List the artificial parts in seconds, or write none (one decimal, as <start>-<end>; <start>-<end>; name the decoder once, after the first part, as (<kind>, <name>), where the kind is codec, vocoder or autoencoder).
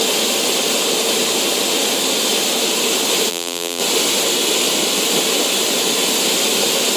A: 3.3-3.8 (vocoder, BigVGAN v2)